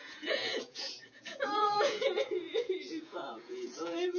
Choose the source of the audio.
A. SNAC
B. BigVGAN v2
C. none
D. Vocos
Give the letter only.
D